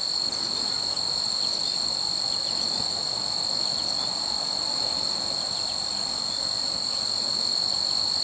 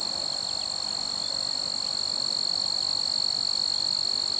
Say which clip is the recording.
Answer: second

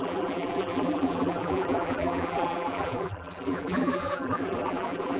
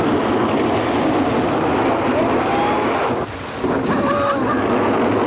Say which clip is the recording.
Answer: second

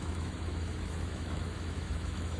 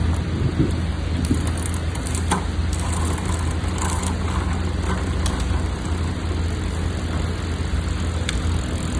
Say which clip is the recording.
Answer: second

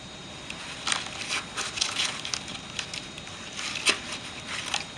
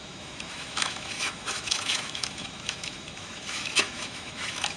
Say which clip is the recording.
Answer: first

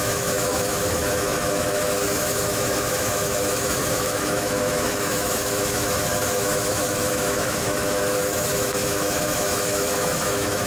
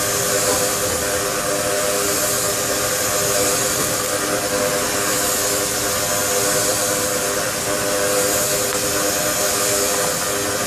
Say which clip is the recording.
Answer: second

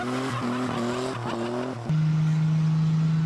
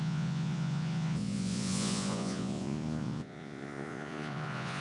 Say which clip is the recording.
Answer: first